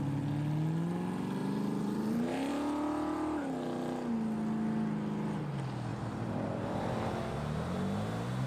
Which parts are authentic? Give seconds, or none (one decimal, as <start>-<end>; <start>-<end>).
0.0-1.4; 2.5-5.9; 7.1-8.5